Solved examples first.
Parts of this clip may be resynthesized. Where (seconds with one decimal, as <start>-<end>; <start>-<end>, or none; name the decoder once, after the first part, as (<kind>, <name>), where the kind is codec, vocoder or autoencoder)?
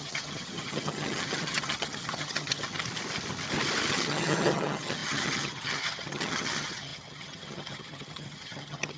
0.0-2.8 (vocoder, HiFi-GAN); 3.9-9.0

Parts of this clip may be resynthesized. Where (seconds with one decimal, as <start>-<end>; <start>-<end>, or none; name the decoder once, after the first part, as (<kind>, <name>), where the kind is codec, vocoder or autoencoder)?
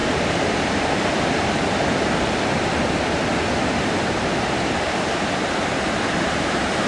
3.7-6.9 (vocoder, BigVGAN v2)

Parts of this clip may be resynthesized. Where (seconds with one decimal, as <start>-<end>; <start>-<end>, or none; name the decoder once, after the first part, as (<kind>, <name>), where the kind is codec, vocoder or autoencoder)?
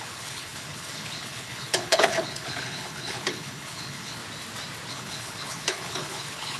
0.0-4.2 (codec, HILCodec); 4.9-6.6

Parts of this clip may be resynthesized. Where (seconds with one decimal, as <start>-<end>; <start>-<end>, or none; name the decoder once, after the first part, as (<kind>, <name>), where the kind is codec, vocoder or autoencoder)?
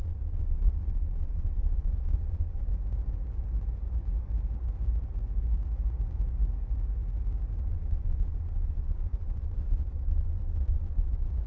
0.0-2.7 (vocoder, Vocos); 7.7-11.5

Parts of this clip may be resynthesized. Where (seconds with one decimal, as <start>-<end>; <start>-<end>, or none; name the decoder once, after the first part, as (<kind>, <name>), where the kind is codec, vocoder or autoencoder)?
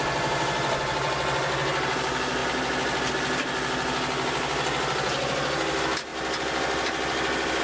none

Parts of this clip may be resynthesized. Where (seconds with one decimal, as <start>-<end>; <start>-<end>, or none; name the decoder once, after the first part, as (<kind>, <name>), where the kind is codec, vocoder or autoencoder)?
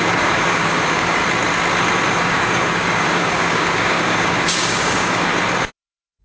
0.0-1.2 (codec, DAC); 2.2-5.3